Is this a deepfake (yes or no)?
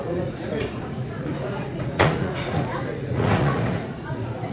yes